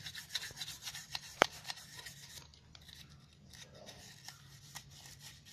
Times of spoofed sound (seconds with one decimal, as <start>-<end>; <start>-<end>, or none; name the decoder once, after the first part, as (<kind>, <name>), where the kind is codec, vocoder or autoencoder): 1.0-1.8 (vocoder, BigVGAN v2)